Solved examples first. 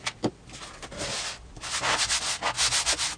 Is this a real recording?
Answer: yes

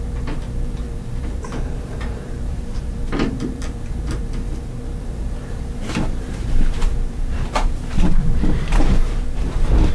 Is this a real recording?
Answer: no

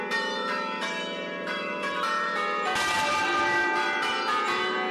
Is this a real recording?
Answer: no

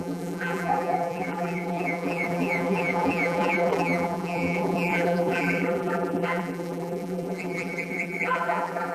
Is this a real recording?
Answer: no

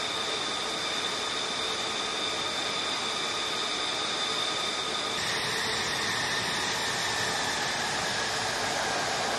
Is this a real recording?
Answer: yes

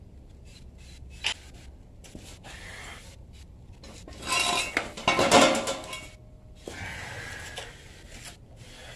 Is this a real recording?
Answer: yes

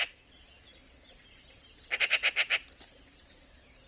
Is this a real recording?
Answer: yes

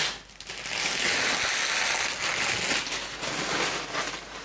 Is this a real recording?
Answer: yes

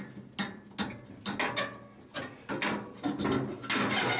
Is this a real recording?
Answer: yes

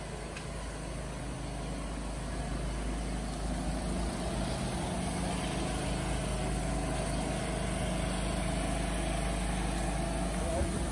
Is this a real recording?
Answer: yes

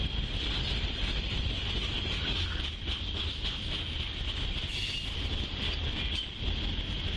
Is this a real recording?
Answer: yes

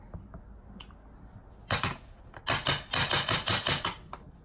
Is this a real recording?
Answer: yes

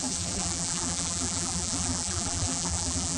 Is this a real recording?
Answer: no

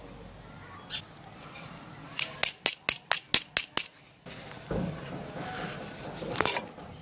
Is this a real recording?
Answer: yes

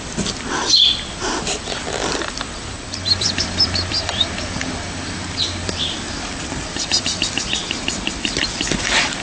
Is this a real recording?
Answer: no